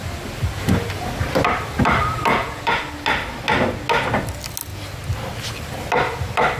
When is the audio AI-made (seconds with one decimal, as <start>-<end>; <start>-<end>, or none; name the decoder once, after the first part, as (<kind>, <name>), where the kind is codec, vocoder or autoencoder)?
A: 2.3-2.8 (vocoder, Vocos)

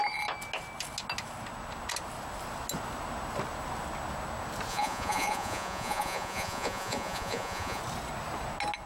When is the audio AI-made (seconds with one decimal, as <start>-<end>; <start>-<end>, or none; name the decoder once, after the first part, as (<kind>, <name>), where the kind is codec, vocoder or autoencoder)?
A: 4.7-7.8 (vocoder, Vocos)

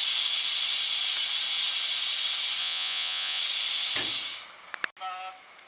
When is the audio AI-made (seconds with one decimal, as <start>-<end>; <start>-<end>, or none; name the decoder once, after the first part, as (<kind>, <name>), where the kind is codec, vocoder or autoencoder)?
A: 2.6-3.4 (vocoder, Vocos)

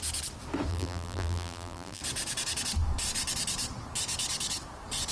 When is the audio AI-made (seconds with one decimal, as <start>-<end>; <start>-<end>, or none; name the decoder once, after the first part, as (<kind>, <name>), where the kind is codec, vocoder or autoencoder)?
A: 0.7-2.0 (vocoder, BigVGAN v2)